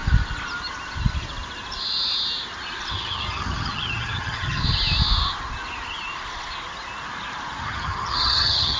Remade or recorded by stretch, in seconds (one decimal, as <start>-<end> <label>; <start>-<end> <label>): 0.0-2.9 recorded; 2.9-4.6 remade; 4.6-7.6 recorded; 7.6-8.8 remade